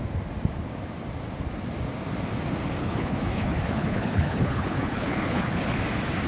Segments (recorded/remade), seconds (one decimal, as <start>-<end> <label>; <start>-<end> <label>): 0.0-2.8 recorded; 2.8-5.8 remade; 5.8-6.3 recorded